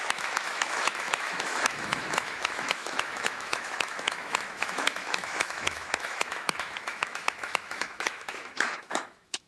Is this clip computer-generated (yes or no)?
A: yes